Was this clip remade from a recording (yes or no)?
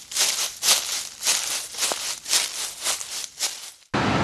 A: no